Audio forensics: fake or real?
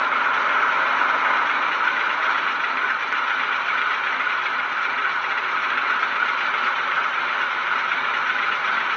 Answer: fake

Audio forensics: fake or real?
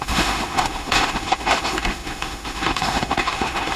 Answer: fake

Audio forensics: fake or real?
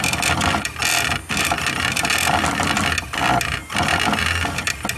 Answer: real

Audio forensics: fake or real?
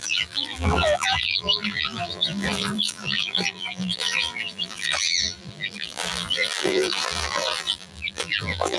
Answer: fake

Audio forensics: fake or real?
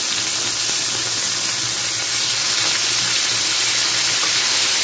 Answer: real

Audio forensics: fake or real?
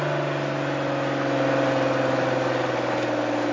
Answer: real